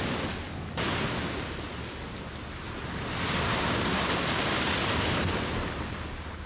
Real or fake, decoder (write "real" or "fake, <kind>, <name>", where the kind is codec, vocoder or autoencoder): real